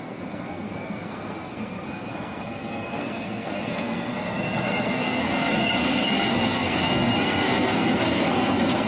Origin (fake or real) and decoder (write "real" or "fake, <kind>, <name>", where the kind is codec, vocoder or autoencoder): fake, codec, SNAC